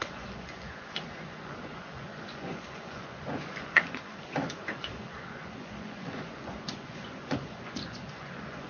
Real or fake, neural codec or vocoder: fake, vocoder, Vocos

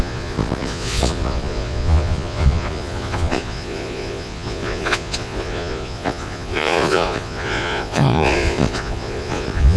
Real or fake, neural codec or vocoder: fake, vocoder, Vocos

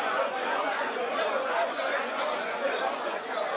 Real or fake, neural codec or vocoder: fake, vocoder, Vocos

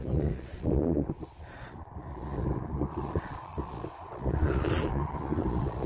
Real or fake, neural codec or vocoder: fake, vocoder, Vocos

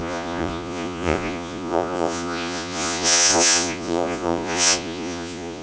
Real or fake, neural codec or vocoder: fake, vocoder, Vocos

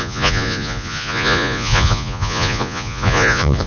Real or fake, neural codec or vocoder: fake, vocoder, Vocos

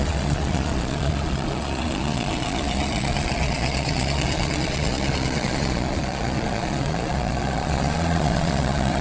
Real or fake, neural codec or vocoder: fake, vocoder, Vocos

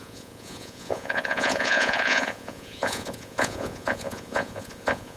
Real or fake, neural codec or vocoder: fake, vocoder, Vocos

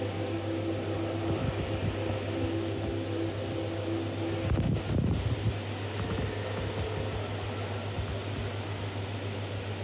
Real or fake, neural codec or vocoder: real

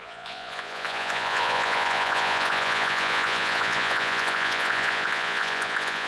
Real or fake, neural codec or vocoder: fake, vocoder, Vocos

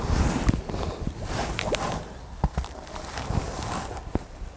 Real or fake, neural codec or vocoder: real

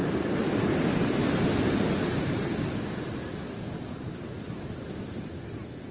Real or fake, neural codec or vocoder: real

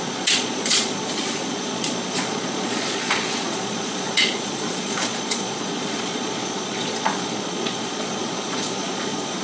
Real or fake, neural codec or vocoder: fake, vocoder, Vocos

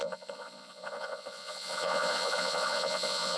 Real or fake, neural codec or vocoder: fake, vocoder, Vocos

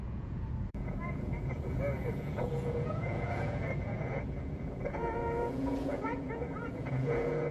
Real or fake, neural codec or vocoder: fake, vocoder, Vocos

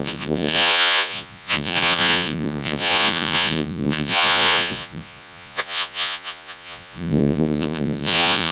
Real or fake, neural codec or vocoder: fake, vocoder, Vocos